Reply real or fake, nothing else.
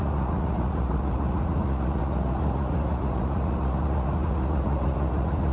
fake